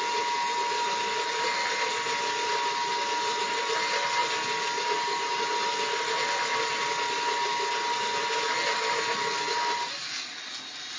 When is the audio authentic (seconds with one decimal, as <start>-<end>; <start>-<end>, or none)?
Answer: 0.0-11.0